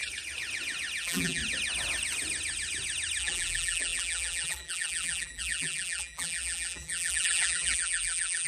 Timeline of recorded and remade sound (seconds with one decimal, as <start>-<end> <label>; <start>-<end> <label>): 0.0-1.0 recorded; 1.0-1.4 remade; 1.4-3.2 recorded; 3.2-8.5 remade